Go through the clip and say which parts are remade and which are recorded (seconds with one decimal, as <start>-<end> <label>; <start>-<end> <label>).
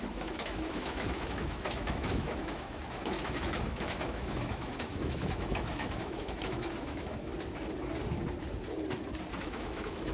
0.0-7.3 remade; 7.3-9.4 recorded; 9.4-10.1 remade